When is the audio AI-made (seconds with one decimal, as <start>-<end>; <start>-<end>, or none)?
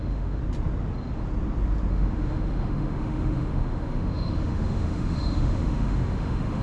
0.0-0.4; 1.9-6.6